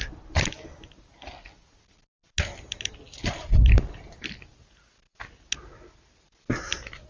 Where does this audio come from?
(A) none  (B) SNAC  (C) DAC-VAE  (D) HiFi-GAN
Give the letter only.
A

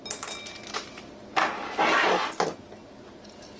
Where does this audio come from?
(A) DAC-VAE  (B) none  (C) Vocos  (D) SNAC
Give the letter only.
B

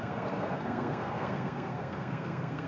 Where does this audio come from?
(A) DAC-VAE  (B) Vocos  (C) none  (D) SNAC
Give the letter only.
D